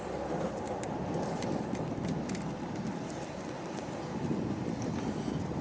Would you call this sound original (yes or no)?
yes